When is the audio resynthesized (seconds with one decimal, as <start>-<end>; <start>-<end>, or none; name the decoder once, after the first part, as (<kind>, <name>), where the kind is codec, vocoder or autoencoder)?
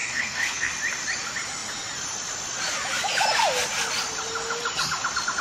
0.0-0.7 (codec, SNAC)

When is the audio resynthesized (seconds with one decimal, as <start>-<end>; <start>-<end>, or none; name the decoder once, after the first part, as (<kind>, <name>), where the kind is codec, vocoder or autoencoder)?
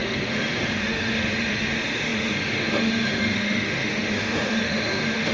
0.0-5.3 (autoencoder, DAC-VAE)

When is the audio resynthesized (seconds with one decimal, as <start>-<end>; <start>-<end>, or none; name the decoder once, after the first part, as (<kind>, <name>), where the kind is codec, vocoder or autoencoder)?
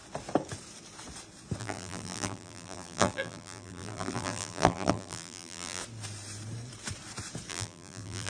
1.6-5.8 (vocoder, BigVGAN v2); 7.5-8.3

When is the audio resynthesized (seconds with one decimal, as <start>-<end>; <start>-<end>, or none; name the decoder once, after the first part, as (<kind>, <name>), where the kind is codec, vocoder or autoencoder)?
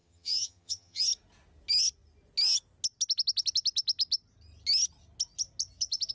0.0-1.0 (vocoder, HiFi-GAN)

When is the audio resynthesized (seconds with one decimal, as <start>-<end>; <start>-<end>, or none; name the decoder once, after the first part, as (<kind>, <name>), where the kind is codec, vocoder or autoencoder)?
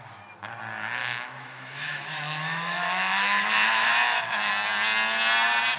1.0-4.5 (autoencoder, DAC-VAE)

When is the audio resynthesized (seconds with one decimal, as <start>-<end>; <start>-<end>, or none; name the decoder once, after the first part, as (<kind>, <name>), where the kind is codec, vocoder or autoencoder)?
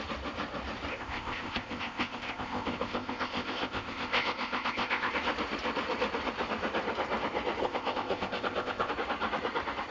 0.9-5.1 (codec, ZipCodec); 7.6-8.9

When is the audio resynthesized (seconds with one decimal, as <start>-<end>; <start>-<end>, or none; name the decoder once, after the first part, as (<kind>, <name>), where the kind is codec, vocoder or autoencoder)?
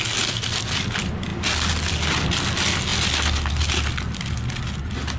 none